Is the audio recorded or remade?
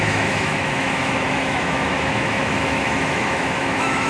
remade